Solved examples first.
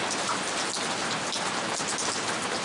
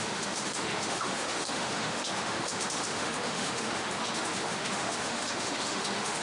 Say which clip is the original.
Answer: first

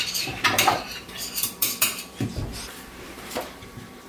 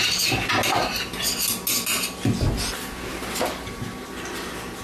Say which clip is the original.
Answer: second